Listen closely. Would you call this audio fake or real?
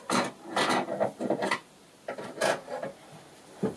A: real